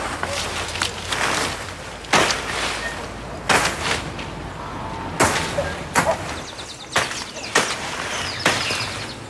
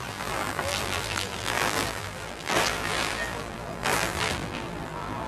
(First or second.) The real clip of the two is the first